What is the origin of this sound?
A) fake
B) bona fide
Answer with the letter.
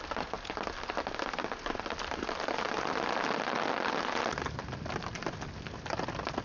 B